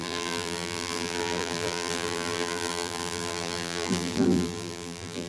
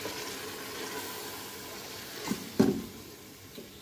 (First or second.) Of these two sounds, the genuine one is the second